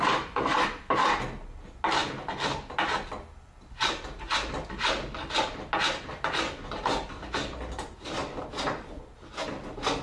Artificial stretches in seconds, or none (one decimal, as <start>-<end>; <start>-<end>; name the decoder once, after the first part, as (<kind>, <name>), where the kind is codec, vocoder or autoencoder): 8.2-9.0 (vocoder, BigVGAN v2)